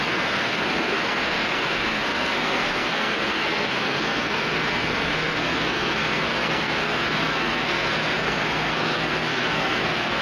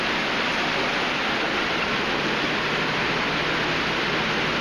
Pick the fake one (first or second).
first